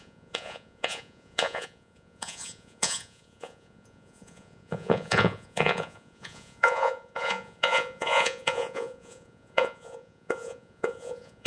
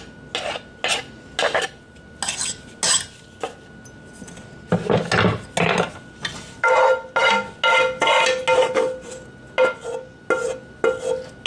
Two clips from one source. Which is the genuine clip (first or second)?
second